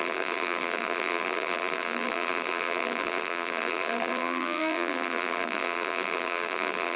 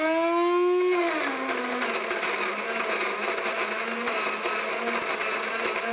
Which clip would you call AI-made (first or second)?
first